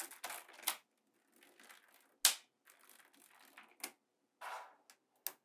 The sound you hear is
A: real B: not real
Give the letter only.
A